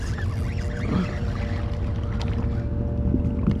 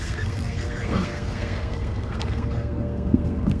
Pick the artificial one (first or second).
second